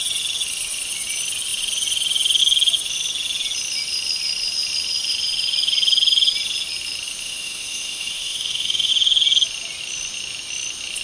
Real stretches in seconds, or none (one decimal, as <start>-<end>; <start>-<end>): 0.0-7.2; 8.9-11.0